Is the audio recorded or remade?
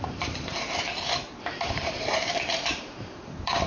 remade